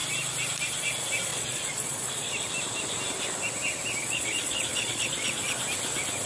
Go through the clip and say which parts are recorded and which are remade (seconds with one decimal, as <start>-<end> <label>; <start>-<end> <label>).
0.0-1.3 recorded; 1.3-2.5 remade; 2.5-4.0 recorded; 4.0-5.5 remade; 5.5-6.3 recorded